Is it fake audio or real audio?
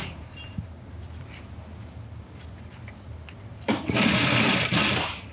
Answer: fake